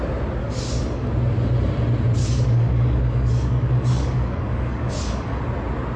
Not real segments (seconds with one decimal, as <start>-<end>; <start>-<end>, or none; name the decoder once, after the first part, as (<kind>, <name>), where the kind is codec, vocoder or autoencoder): 0.4-1.1 (codec, DAC); 2.2-5.4